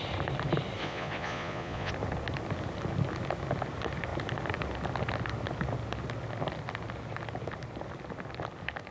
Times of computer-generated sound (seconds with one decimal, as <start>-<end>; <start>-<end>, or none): 0.8-1.9